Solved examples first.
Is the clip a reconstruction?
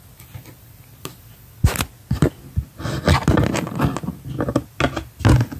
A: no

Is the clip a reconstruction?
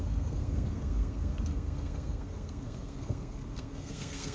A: yes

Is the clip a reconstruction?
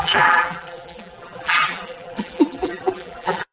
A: yes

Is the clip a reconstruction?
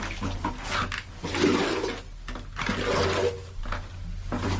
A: no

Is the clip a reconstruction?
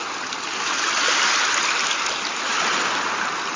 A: no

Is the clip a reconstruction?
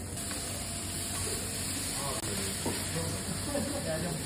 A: no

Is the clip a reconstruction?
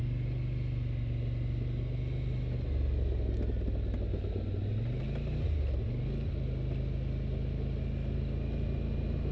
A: no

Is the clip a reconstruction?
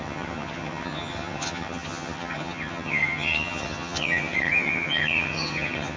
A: yes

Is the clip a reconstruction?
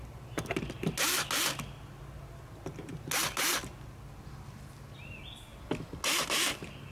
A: no